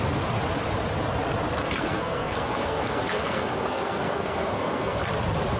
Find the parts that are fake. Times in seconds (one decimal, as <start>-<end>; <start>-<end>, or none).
1.6-5.0